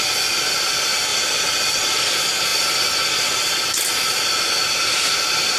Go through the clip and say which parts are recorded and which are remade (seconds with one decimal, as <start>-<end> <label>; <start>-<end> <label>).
0.0-5.6 recorded